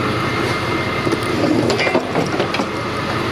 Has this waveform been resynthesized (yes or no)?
no